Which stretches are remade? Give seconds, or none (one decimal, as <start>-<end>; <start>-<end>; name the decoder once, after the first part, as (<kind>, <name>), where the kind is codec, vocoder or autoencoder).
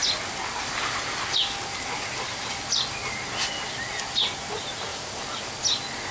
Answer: 4.9-5.5 (vocoder, BigVGAN v2)